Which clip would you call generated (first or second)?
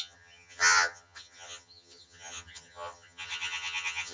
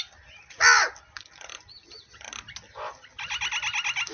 first